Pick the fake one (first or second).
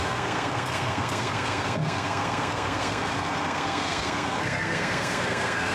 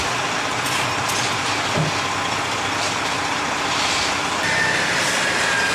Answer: first